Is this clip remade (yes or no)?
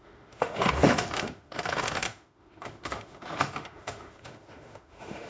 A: yes